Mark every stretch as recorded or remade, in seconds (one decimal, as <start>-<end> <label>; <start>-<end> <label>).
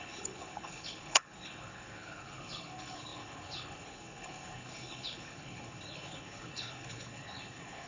0.0-7.9 remade